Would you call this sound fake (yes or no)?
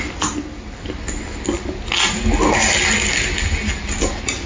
no